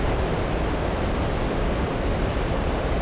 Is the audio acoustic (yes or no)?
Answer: yes